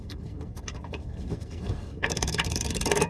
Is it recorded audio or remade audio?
remade